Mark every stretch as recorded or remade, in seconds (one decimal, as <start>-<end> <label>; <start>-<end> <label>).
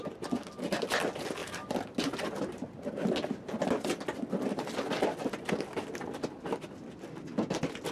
0.0-7.9 recorded